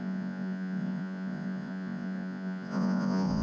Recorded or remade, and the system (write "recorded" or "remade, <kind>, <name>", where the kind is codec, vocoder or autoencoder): remade, vocoder, Vocos